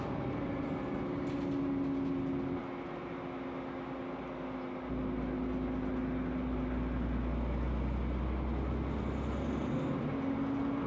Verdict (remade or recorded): recorded